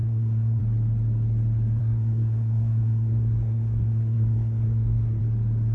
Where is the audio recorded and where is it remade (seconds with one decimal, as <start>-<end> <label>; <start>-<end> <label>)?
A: 0.0-0.6 remade; 0.6-1.8 recorded; 1.8-5.2 remade; 5.2-5.7 recorded

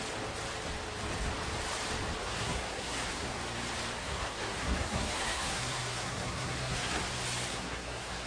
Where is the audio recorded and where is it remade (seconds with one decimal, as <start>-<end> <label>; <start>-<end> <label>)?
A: 0.0-2.2 recorded; 2.2-3.3 remade; 3.3-4.0 recorded; 4.0-7.0 remade; 7.0-7.5 recorded; 7.5-8.3 remade

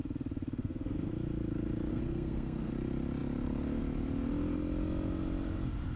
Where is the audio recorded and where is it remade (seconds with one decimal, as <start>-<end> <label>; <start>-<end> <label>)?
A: 0.0-0.6 recorded; 0.6-1.1 remade; 1.1-1.9 recorded; 1.9-2.7 remade; 2.7-6.0 recorded

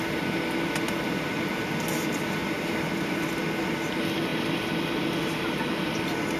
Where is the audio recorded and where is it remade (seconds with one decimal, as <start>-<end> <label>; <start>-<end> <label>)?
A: 0.0-6.4 recorded

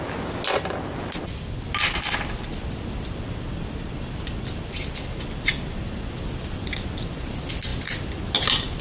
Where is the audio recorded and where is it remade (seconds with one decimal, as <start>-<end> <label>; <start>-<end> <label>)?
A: 0.0-8.8 recorded

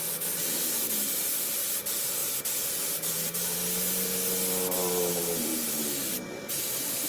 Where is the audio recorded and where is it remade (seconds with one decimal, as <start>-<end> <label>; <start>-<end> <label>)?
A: 0.0-7.1 recorded

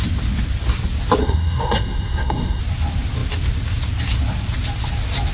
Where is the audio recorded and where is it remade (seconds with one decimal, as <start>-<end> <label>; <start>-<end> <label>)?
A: 0.0-1.2 recorded; 1.2-2.6 remade; 2.6-5.3 recorded